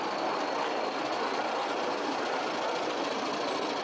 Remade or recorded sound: recorded